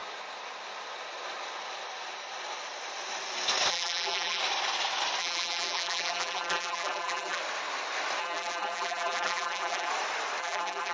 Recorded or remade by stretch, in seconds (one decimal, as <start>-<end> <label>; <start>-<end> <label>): 0.0-3.7 recorded; 3.7-4.4 remade; 4.4-5.2 recorded; 5.2-7.4 remade; 7.4-8.2 recorded; 8.2-9.9 remade; 9.9-10.4 recorded; 10.4-10.9 remade